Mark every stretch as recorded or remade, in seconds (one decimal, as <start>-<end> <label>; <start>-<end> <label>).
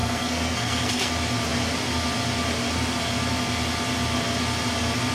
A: 0.0-1.1 remade; 1.1-5.1 recorded